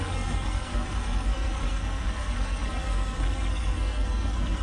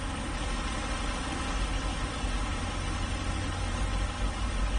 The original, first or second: second